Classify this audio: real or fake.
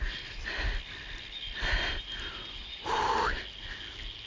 real